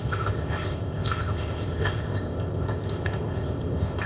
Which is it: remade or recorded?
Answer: remade